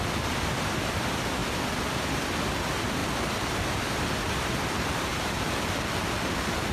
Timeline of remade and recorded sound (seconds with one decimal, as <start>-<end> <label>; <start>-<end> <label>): 0.0-6.7 recorded